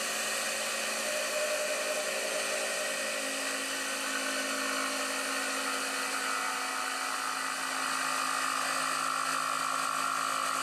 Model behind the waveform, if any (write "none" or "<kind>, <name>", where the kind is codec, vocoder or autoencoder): none